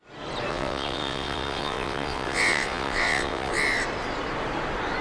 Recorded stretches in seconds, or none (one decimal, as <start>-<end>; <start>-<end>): 0.0-0.5; 3.5-5.0